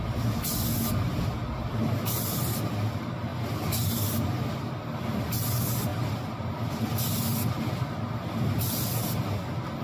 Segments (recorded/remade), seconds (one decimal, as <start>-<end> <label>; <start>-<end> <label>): 0.0-9.8 recorded